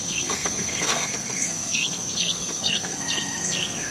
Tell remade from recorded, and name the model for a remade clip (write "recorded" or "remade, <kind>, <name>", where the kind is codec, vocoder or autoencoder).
remade, codec, SNAC